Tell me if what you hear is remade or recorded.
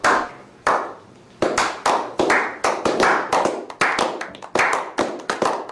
recorded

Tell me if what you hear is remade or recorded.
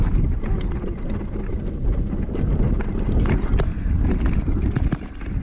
recorded